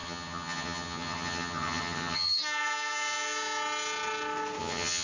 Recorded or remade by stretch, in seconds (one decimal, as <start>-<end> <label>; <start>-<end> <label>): 0.0-2.4 remade; 2.4-4.6 recorded; 4.6-5.0 remade